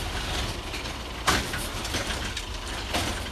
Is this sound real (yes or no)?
yes